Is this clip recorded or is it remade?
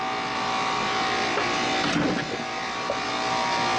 recorded